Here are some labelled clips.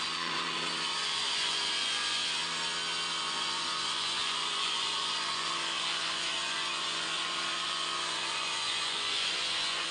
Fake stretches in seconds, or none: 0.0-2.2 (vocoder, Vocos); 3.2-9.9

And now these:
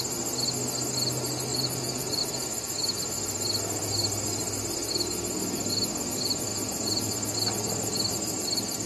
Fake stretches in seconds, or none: 1.5-2.2 (vocoder, Vocos); 6.5-7.1